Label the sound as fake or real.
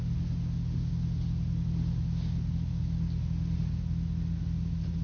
real